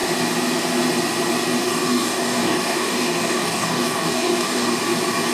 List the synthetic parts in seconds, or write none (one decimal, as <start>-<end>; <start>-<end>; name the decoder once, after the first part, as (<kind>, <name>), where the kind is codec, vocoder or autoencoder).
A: 1.6-4.8 (codec, DAC)